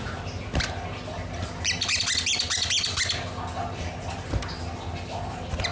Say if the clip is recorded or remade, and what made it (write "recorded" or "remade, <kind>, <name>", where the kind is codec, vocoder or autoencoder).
recorded